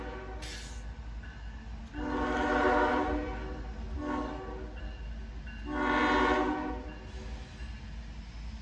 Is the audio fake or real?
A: real